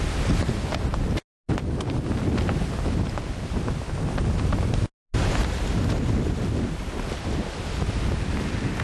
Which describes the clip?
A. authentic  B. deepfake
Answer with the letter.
A